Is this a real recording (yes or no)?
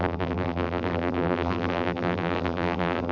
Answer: no